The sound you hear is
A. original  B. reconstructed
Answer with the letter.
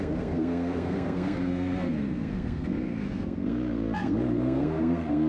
B